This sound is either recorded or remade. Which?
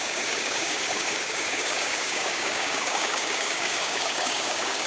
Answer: remade